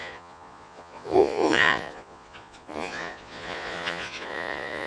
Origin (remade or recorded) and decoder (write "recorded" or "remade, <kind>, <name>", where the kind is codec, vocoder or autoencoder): remade, vocoder, Vocos